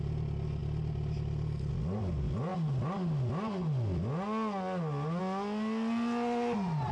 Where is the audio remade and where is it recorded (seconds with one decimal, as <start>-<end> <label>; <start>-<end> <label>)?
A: 0.0-6.9 recorded